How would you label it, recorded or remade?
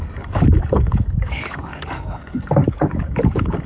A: remade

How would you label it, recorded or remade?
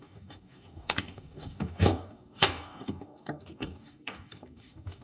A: remade